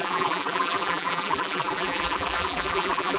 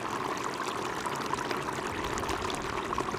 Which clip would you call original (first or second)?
second